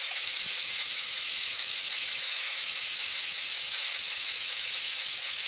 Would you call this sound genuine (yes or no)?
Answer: no